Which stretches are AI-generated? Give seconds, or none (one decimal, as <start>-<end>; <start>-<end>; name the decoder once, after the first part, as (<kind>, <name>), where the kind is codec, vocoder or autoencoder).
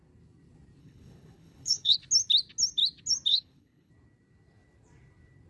0.8-2.0 (codec, HILCodec); 3.3-3.9